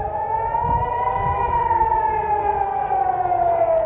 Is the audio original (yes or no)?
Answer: no